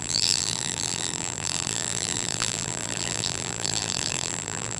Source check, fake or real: fake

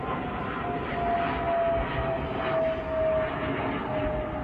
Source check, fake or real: real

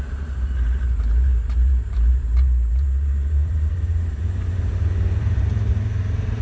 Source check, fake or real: fake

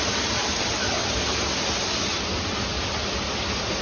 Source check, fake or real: real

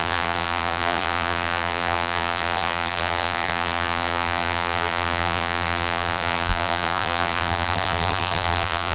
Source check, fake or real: fake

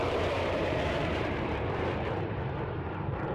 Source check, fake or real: fake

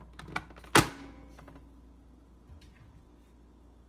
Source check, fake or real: real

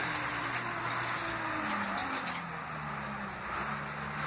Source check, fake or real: real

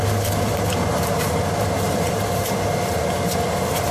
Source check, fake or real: fake